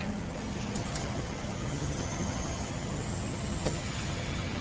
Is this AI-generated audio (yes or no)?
yes